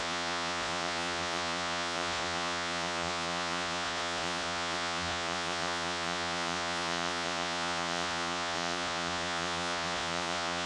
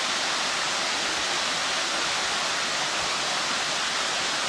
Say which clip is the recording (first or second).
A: second